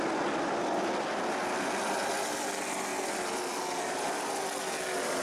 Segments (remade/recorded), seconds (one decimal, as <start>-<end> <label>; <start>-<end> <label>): 0.0-2.9 recorded; 2.9-3.4 remade; 3.4-5.2 recorded